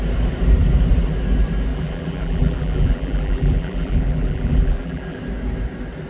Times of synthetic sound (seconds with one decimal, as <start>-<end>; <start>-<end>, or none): 1.7-5.2